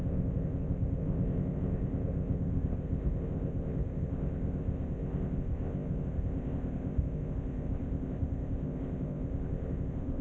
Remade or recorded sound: remade